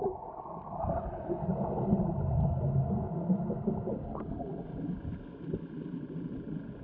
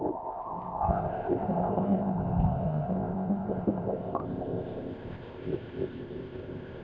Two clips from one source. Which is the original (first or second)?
first